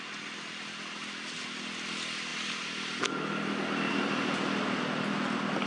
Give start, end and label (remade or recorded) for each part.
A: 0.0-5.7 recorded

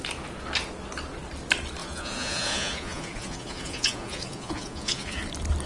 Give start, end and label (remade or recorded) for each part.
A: 0.0-1.8 recorded; 1.8-5.2 remade; 5.2-5.7 recorded

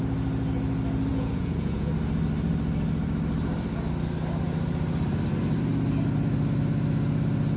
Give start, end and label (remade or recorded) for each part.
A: 0.0-1.1 recorded; 1.1-1.9 remade; 1.9-7.6 recorded